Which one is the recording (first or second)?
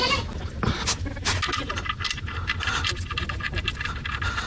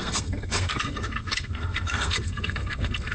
first